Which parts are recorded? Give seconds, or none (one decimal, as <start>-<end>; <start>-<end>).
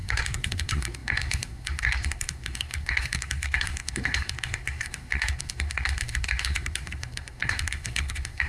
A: none